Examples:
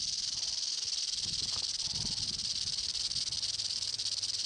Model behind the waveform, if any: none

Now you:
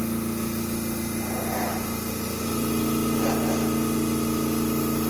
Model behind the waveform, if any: none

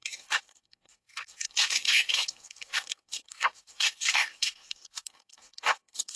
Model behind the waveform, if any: codec, SNAC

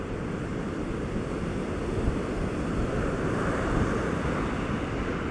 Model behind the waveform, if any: none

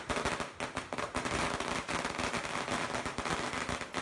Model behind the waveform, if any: none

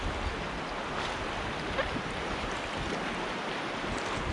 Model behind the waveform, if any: none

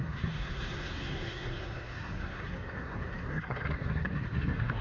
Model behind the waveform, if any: codec, SNAC